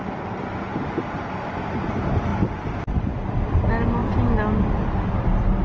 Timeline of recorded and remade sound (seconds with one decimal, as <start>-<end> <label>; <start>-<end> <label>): 0.0-5.6 recorded